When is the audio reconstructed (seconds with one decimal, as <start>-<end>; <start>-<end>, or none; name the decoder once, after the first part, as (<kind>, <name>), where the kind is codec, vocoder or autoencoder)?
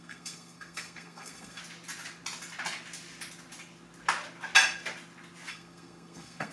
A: 0.0-1.6 (codec, SNAC); 5.5-6.5